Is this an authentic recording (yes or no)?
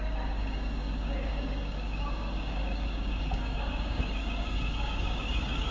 no